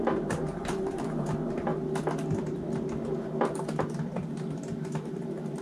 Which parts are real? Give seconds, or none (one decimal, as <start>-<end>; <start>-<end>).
1.7-5.1